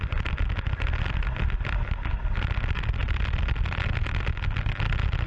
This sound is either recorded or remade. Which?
recorded